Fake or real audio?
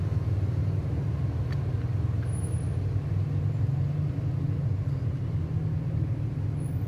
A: real